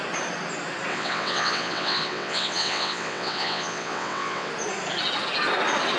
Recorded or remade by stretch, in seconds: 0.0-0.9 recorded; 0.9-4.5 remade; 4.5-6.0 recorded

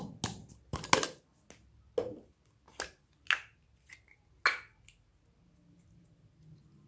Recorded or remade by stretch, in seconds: 0.0-6.9 recorded

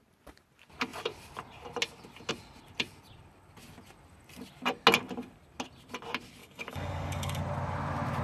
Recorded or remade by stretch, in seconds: 0.0-6.4 recorded; 6.4-7.4 remade; 7.4-8.2 recorded

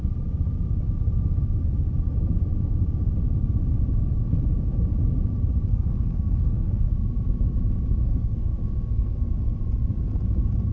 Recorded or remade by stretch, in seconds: 0.0-5.7 recorded; 5.7-6.9 remade; 6.9-8.0 recorded; 8.0-9.6 remade; 9.6-10.7 recorded

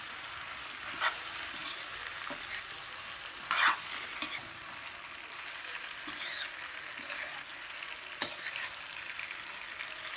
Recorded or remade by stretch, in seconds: 0.0-10.2 recorded

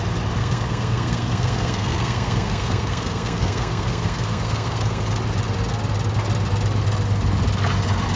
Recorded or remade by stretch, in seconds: 0.0-0.4 recorded; 0.4-5.2 remade; 5.2-8.2 recorded